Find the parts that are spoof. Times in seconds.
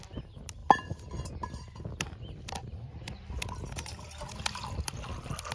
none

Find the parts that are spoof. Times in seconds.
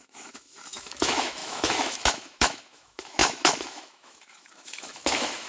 0.0-5.5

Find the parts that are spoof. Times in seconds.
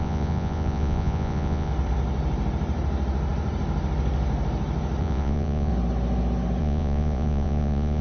0.0-1.7; 5.0-5.7; 6.6-8.0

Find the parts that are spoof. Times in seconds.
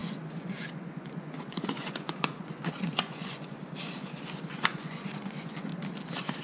0.0-3.6; 4.5-5.7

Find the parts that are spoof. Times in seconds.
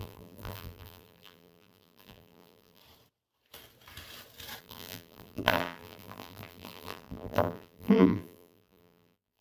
0.0-2.8; 4.6-9.4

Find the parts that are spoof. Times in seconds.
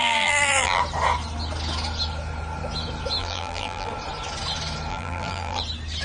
0.0-0.8; 3.2-3.9; 4.9-5.6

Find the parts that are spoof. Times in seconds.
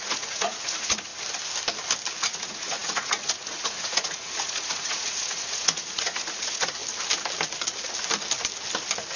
0.0-1.1; 2.2-6.8